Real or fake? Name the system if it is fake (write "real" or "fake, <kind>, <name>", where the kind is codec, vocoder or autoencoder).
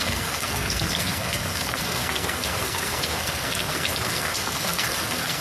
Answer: fake, codec, SNAC